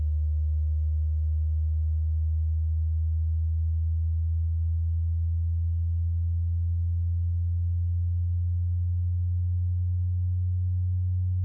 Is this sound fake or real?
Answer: real